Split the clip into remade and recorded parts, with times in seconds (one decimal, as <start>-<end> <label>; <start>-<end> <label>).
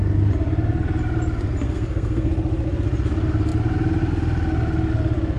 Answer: 0.0-1.6 recorded; 1.6-2.3 remade; 2.3-5.4 recorded